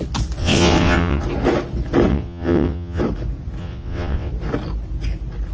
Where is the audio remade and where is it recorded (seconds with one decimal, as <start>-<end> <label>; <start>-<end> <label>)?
0.0-0.4 recorded; 0.4-1.2 remade; 1.2-2.1 recorded; 2.1-3.0 remade; 3.0-3.6 recorded; 3.6-4.3 remade; 4.3-5.5 recorded